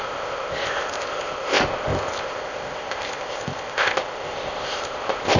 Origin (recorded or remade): remade